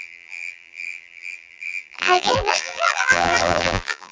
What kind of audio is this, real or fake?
fake